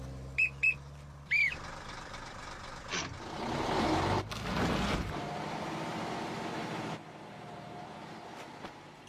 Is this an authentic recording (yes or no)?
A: no